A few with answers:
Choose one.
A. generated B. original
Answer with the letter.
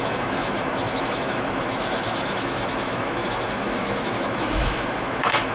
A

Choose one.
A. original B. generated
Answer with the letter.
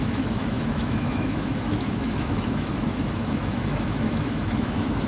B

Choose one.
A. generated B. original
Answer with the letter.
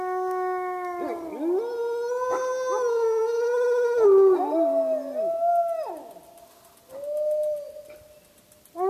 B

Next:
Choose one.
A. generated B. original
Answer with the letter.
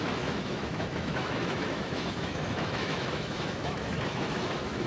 A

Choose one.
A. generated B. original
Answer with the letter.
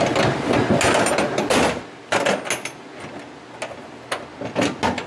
B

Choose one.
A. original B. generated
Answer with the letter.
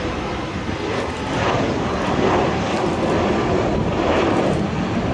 A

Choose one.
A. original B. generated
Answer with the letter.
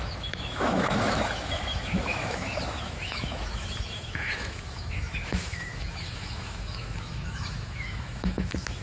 B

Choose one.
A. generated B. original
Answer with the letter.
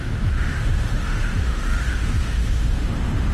A